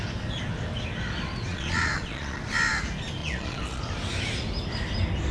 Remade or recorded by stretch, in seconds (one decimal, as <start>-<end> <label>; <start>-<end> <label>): 0.0-1.5 recorded; 1.5-2.4 remade; 2.4-3.2 recorded; 3.2-3.8 remade; 3.8-5.3 recorded